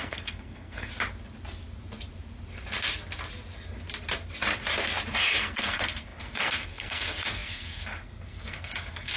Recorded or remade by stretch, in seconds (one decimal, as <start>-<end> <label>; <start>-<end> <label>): 0.0-0.9 remade; 0.9-5.4 recorded; 5.4-9.2 remade